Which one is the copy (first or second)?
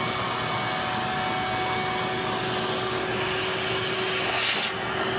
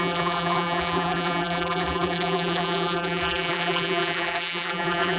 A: second